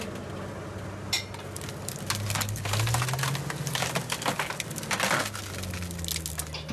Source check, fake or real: real